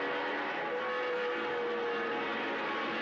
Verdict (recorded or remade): recorded